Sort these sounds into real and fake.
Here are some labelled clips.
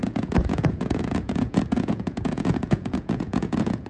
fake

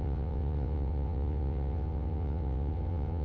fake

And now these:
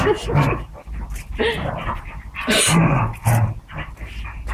real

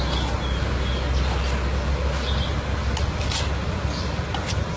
real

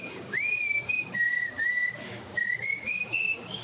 fake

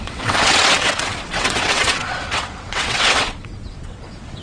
fake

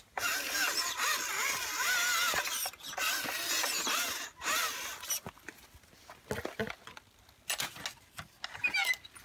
real